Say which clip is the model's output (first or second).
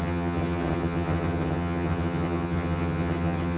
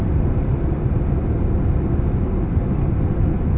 first